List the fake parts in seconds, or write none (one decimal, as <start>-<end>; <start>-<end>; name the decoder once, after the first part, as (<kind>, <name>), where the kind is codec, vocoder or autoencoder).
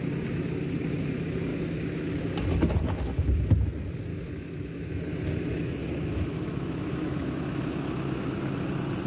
1.5-2.2 (autoencoder, DAC-VAE); 4.1-5.0; 5.8-8.3